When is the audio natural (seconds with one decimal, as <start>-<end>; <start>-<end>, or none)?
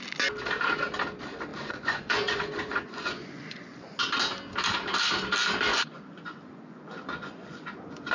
0.0-1.5; 4.0-5.7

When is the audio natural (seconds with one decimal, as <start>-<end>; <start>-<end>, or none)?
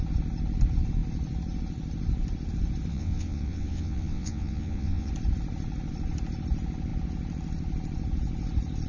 0.0-2.9; 5.1-8.9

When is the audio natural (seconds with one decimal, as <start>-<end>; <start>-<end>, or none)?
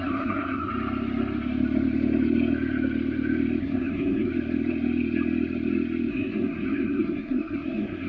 0.7-3.6; 4.3-6.1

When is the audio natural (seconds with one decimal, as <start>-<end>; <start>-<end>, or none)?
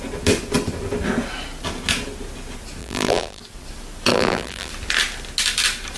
0.0-2.8; 3.4-4.1; 4.7-6.0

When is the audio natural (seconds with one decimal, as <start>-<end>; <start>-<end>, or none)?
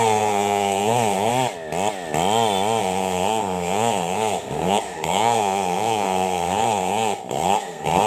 1.3-2.8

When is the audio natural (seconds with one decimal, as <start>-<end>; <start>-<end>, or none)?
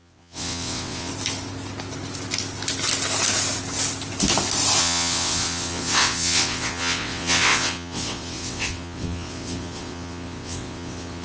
1.1-4.8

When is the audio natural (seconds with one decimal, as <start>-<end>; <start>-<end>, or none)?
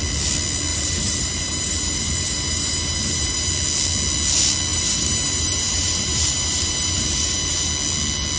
0.0-0.7; 3.5-4.7; 7.7-8.4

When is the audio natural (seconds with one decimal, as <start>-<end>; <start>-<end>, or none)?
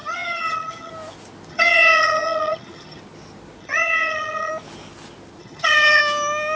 0.9-1.5; 3.0-3.6; 4.5-5.4; 6.0-6.6